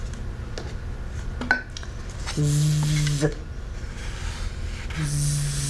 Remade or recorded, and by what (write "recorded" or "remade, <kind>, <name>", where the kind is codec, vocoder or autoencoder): recorded